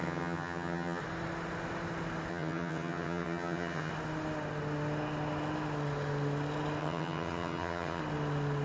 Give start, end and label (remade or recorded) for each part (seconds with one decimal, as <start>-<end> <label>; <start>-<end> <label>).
0.0-1.0 remade; 1.0-2.3 recorded; 2.3-3.9 remade; 3.9-6.8 recorded; 6.8-8.0 remade; 8.0-8.6 recorded